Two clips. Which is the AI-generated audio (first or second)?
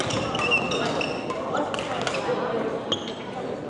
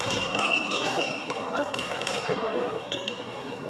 second